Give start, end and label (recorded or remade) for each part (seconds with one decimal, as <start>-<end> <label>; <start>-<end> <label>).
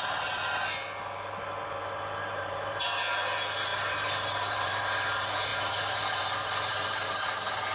0.0-2.2 recorded; 2.2-2.9 remade; 2.9-3.7 recorded; 3.7-4.8 remade; 4.8-5.5 recorded; 5.5-7.2 remade; 7.2-7.7 recorded